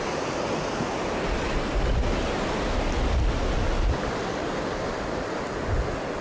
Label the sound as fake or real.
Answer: real